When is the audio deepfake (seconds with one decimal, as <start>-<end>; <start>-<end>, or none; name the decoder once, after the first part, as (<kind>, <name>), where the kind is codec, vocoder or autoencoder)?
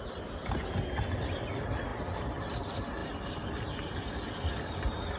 none